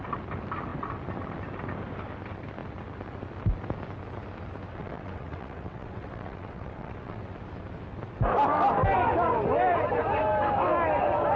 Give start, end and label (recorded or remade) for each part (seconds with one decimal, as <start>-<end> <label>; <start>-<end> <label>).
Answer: 0.0-4.7 recorded; 4.7-7.2 remade; 7.2-11.4 recorded